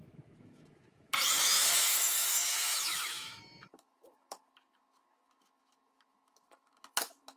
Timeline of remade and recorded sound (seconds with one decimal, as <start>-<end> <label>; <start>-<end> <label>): 0.0-7.4 remade